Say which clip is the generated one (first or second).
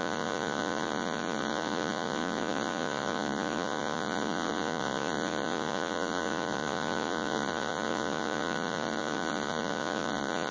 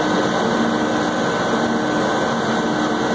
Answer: first